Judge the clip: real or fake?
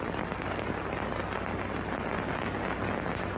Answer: real